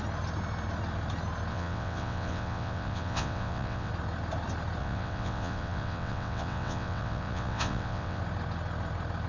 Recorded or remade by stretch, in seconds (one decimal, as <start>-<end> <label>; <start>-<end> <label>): 0.0-1.5 recorded; 1.5-3.9 remade; 3.9-4.8 recorded; 4.8-8.2 remade; 8.2-9.3 recorded